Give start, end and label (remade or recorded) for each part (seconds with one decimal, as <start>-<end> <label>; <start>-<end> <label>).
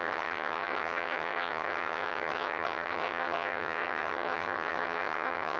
0.0-5.6 remade